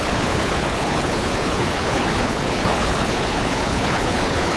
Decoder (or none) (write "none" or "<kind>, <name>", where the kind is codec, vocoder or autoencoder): codec, HILCodec